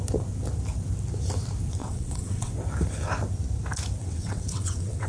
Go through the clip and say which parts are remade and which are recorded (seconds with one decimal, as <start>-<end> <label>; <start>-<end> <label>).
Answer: 0.0-1.8 recorded; 1.8-2.5 remade; 2.5-4.0 recorded; 4.0-5.1 remade